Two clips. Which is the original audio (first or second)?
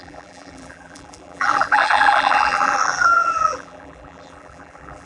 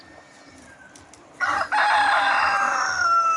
second